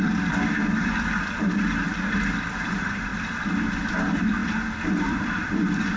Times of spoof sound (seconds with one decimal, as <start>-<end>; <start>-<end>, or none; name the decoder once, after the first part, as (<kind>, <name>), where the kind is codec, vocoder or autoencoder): 0.0-3.1 (vocoder, BigVGAN v2); 3.9-4.4; 5.0-6.0